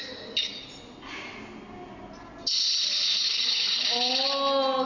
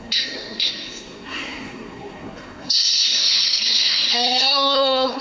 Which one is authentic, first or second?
first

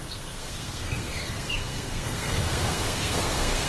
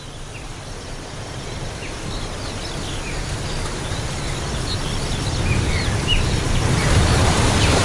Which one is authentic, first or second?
second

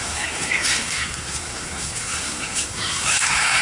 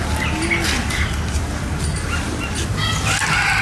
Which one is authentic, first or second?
second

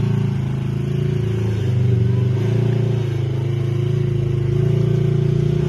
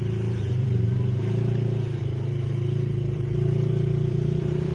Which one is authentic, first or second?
first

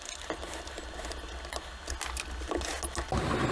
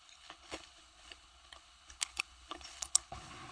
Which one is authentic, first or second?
first